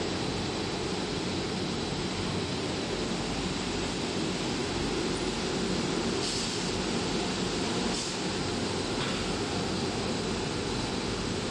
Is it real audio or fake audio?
real